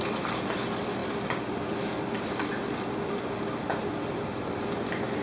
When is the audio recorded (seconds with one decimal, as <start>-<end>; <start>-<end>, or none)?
0.0-5.2